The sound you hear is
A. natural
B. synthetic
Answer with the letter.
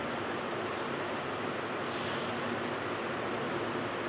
A